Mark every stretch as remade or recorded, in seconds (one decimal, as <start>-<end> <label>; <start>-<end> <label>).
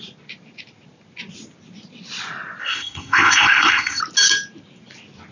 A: 0.0-2.6 recorded; 2.6-4.0 remade; 4.0-5.3 recorded